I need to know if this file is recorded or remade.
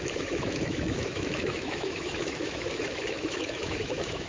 remade